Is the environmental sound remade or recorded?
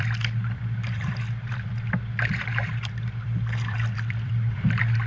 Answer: remade